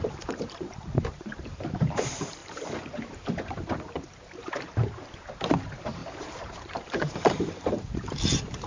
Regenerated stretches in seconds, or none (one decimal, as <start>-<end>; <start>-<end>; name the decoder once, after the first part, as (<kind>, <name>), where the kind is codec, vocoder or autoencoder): 0.0-2.4 (vocoder, BigVGAN v2); 5.1-8.7